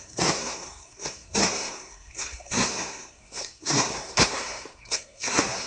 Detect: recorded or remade remade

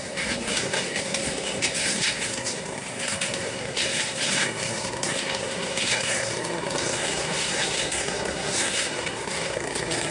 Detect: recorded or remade remade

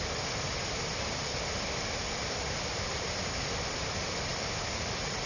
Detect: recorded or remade recorded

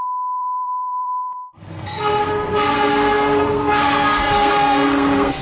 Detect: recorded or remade remade